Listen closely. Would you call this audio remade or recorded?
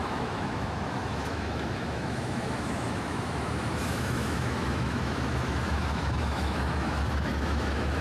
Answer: remade